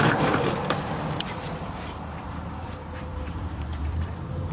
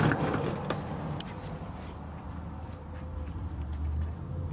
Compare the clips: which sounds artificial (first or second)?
first